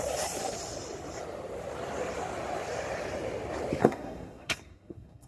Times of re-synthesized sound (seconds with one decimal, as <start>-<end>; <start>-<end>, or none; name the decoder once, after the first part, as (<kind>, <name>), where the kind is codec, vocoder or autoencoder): 3.8-5.3 (codec, SNAC)